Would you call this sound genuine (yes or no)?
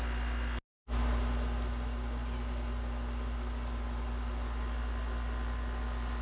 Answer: yes